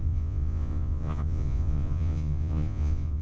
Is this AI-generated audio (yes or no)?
yes